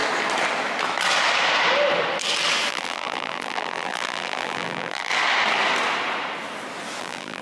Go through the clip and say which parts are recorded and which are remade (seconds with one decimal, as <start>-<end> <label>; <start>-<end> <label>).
0.0-2.7 recorded; 2.7-5.1 remade; 5.1-7.0 recorded; 7.0-7.4 remade